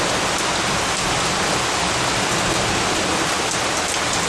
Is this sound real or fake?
real